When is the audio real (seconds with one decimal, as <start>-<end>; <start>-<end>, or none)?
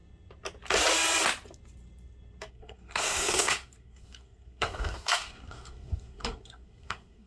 0.0-2.5